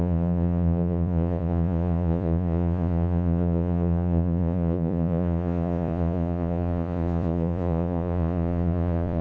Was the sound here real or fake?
fake